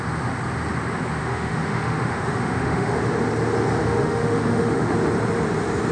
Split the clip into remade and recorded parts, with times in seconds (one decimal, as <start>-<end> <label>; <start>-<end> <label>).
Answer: 0.0-1.2 recorded; 1.2-3.0 remade; 3.0-3.8 recorded; 3.8-4.9 remade; 4.9-5.9 recorded